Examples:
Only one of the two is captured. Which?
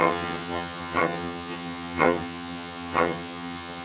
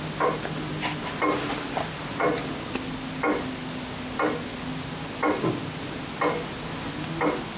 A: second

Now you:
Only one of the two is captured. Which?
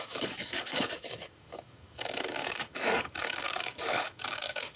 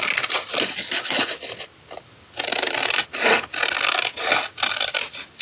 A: second